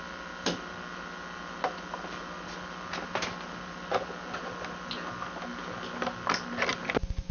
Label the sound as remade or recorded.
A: recorded